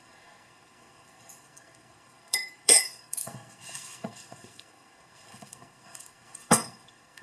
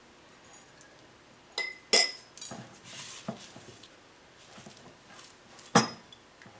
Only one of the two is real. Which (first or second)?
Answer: second